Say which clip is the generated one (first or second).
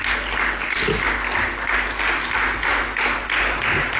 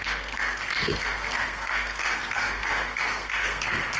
second